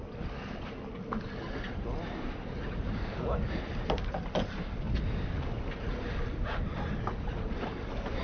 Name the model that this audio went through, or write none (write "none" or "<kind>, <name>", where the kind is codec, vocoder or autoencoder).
none